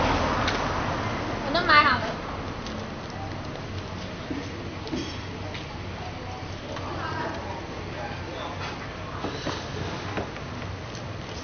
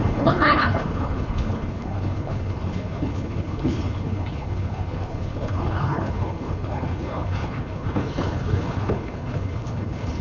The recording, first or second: first